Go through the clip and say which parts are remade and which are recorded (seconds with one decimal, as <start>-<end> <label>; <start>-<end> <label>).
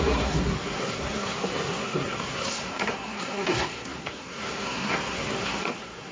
0.0-6.1 remade